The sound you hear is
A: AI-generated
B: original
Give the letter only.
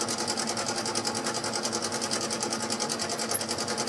B